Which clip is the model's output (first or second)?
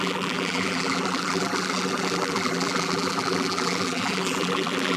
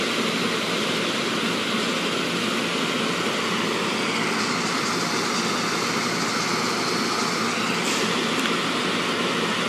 first